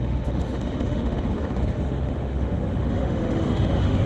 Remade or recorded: remade